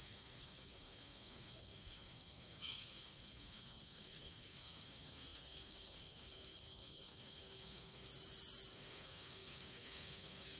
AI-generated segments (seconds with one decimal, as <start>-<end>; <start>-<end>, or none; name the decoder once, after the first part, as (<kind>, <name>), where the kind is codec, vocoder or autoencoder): 0.0-8.1 (codec, SNAC); 8.7-10.6